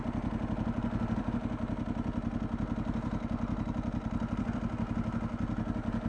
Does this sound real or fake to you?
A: real